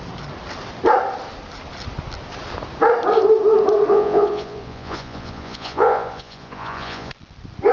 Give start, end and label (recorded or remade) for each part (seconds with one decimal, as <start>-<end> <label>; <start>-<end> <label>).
0.0-3.9 recorded; 3.9-7.1 remade; 7.1-7.7 recorded